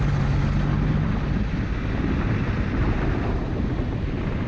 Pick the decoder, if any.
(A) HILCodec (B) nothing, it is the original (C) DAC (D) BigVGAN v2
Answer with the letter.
B